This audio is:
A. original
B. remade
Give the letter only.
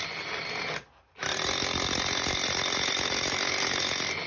A